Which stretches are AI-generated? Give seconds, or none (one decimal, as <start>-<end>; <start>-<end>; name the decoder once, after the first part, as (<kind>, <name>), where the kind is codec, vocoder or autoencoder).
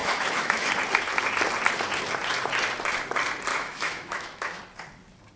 0.0-0.7 (autoencoder, DAC-VAE); 3.5-4.6